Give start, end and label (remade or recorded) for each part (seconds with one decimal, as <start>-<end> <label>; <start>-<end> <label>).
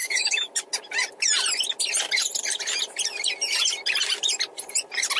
0.0-0.5 remade; 0.5-5.2 recorded